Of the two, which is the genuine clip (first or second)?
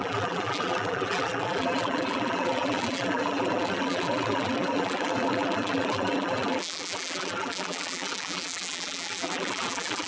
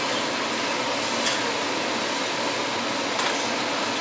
second